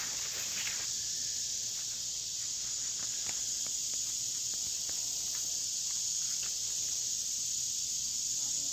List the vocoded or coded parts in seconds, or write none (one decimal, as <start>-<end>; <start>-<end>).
none